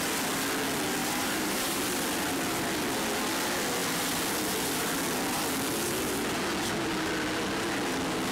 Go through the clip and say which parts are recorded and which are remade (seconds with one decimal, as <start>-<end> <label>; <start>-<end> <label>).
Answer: 0.0-1.0 recorded; 1.0-1.8 remade; 1.8-8.3 recorded